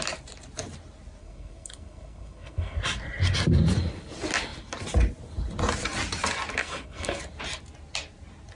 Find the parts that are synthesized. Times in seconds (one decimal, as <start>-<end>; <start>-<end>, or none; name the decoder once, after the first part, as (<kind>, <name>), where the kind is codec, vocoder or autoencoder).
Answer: 1.2-2.8 (codec, SNAC); 6.6-7.2